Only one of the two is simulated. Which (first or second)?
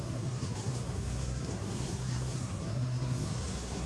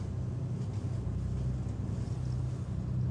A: first